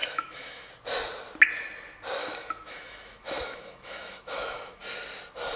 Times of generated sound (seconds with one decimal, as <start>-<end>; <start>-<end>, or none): 0.0-0.7; 2.2-4.8